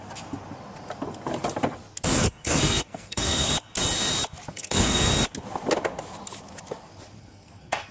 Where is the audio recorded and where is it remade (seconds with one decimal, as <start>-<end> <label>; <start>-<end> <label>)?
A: 0.0-2.2 recorded; 2.2-3.5 remade; 3.5-4.5 recorded; 4.5-5.0 remade; 5.0-7.2 recorded; 7.2-7.9 remade

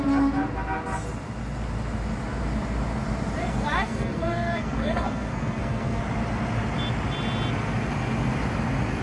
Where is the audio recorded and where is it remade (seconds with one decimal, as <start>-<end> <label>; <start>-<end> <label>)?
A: 0.0-3.4 recorded; 3.4-6.0 remade; 6.0-9.0 recorded

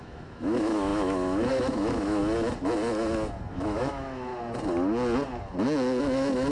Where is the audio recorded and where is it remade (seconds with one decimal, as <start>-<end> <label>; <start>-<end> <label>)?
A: 0.0-2.2 remade; 2.2-3.5 recorded; 3.5-4.3 remade; 4.3-6.0 recorded; 6.0-6.5 remade

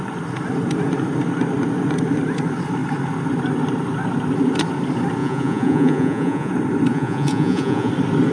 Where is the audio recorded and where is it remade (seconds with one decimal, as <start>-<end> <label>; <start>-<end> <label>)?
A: 0.0-5.2 recorded; 5.2-6.5 remade; 6.5-6.9 recorded; 6.9-7.9 remade; 7.9-8.3 recorded

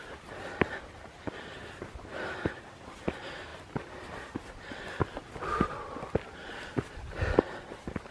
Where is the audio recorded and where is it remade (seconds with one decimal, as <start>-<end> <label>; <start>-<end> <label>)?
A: 0.0-8.1 recorded

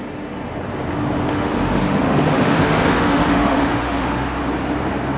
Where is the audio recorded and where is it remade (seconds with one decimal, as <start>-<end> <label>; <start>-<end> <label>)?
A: 0.0-1.3 recorded; 1.3-4.4 remade; 4.4-5.2 recorded

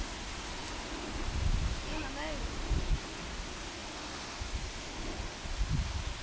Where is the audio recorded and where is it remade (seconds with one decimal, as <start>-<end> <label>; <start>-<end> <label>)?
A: 0.0-6.2 recorded